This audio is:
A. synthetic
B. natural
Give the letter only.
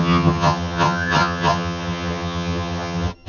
A